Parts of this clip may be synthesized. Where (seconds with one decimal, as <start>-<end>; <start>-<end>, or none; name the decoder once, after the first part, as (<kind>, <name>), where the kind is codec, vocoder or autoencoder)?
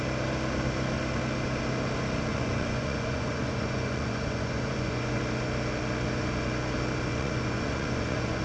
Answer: 2.3-5.2 (vocoder, Vocos); 7.1-8.4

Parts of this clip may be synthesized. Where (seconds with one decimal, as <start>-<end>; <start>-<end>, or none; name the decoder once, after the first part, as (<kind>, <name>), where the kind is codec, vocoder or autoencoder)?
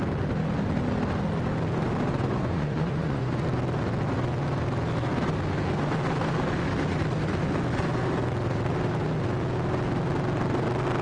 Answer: 2.1-3.4 (vocoder, Vocos)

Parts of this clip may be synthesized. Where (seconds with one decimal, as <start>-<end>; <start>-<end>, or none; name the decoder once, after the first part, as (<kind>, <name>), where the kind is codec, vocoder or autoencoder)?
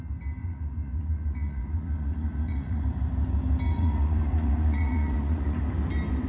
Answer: 0.4-2.8 (vocoder, Vocos); 3.7-5.6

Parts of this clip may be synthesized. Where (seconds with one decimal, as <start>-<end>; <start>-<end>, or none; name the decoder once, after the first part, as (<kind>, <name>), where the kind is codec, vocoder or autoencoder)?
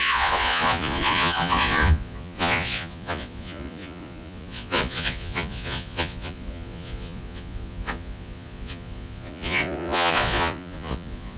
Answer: 0.0-11.4 (vocoder, Vocos)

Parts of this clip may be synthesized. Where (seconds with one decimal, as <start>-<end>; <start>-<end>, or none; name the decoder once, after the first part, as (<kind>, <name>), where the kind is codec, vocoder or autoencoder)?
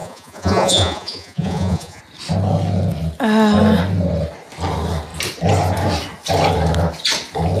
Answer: 0.0-2.0 (vocoder, Vocos)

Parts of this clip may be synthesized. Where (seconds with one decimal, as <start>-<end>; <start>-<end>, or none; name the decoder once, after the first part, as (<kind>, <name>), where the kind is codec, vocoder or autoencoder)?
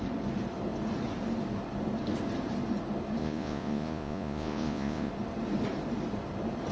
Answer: 3.2-5.1 (vocoder, Vocos)